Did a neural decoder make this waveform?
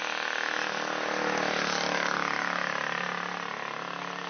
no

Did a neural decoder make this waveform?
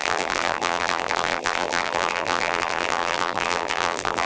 yes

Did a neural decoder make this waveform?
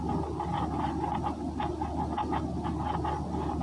no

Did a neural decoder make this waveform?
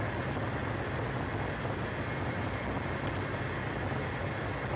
no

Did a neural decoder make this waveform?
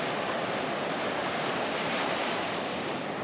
yes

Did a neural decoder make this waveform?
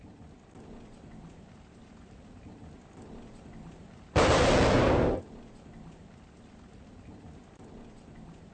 no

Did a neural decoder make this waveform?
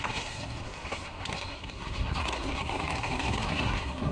yes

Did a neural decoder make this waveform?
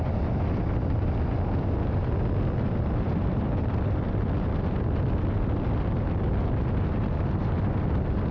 no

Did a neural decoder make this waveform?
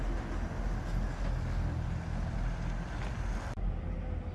no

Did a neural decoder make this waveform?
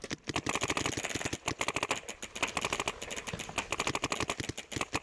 no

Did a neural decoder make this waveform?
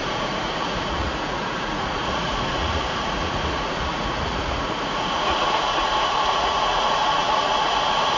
yes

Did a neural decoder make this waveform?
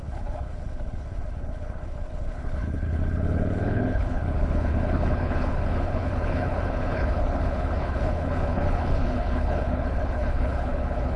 yes